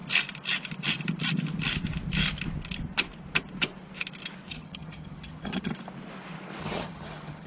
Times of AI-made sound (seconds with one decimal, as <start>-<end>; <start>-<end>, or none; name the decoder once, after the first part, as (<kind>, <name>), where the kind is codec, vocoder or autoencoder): 4.5-5.7 (vocoder, HiFi-GAN); 6.6-7.5